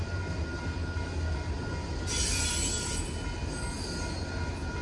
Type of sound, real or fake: real